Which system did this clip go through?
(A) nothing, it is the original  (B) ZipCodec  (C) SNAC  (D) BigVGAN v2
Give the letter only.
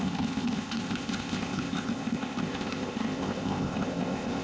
B